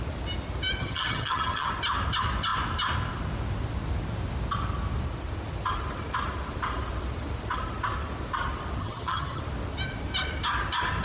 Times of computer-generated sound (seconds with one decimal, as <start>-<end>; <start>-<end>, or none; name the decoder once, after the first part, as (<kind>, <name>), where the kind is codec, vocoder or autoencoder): 0.8-1.7 (vocoder, HiFi-GAN); 8.8-9.4